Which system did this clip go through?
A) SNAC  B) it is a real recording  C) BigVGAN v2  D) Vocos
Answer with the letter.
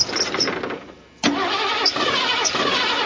B